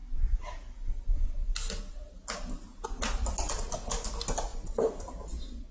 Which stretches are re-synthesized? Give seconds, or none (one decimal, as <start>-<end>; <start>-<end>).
none